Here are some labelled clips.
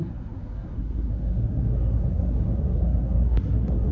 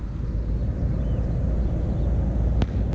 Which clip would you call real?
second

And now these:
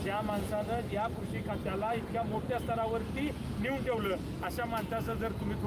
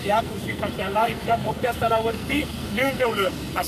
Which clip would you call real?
first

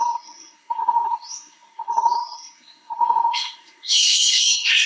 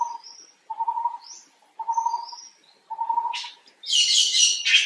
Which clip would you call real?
second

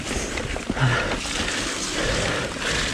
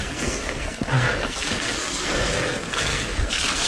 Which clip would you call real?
first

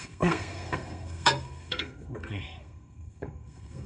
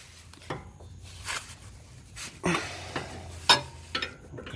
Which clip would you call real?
second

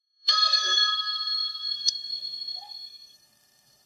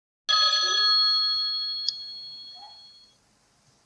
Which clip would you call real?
second